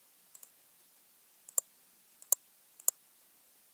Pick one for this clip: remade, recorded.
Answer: recorded